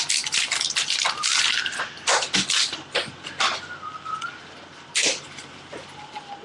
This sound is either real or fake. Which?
real